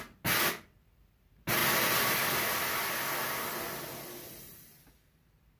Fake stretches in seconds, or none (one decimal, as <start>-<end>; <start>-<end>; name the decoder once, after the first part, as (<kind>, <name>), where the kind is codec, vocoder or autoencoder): none